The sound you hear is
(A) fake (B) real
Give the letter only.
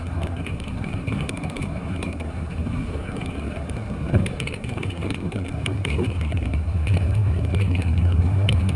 A